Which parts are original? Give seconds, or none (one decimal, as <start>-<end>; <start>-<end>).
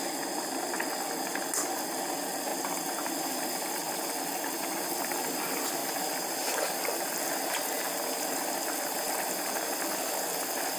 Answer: 0.0-10.8